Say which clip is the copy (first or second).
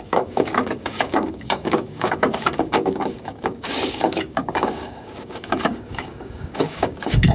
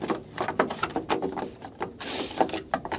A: first